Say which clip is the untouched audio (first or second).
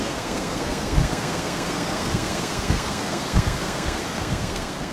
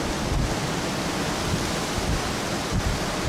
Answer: second